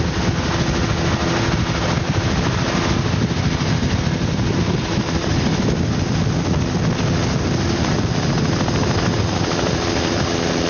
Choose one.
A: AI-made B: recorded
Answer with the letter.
B